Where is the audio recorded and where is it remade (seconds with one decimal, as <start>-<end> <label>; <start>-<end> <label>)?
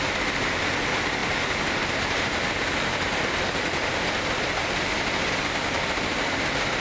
0.0-6.8 recorded